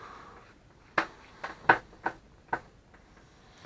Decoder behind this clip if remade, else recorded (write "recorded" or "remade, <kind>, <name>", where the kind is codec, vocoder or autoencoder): recorded